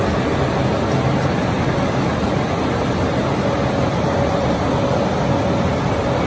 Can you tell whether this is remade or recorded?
recorded